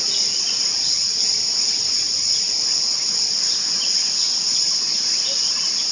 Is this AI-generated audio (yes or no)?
no